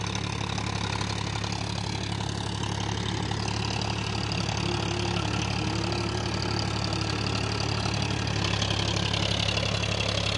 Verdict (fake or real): real